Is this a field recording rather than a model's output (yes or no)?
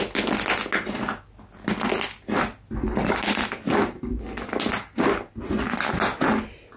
yes